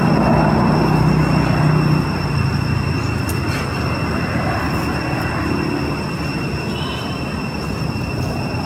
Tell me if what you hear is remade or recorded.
recorded